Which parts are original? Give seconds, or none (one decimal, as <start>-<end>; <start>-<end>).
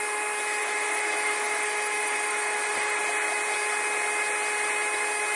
0.0-0.6; 3.0-5.4